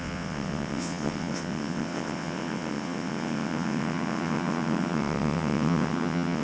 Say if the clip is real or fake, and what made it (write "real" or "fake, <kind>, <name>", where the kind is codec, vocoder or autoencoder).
fake, vocoder, WaveNeXt